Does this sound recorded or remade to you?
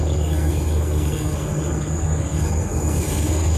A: remade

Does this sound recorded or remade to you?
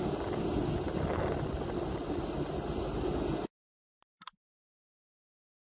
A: recorded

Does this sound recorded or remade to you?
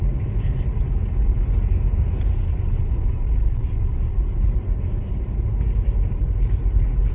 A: recorded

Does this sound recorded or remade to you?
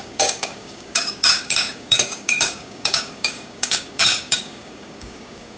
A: remade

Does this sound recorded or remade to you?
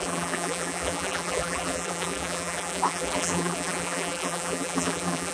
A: remade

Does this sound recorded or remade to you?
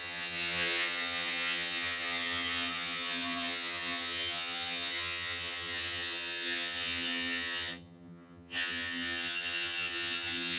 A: remade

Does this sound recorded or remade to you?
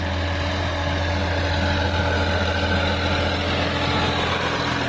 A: recorded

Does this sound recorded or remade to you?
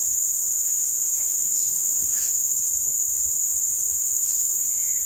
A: remade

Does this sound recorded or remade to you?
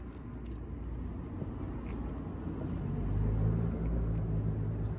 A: recorded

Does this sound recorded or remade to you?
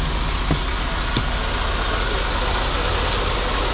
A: recorded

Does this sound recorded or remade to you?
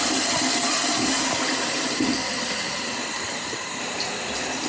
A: recorded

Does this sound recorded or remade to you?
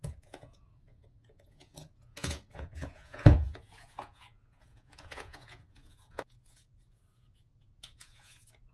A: remade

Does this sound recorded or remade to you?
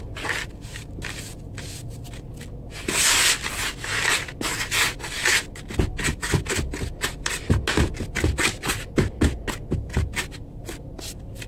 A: recorded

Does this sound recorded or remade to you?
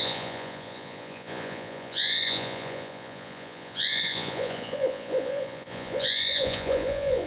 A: remade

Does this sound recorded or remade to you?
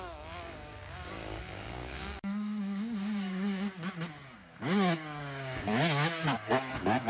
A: remade